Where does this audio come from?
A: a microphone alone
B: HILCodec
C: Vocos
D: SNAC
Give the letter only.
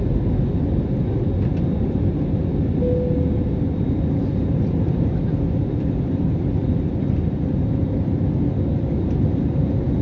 A